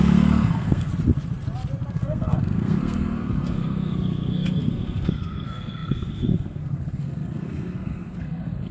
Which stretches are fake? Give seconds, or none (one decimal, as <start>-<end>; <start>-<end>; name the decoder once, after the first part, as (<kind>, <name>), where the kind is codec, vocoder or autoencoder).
0.0-0.9 (codec, SNAC); 1.9-8.7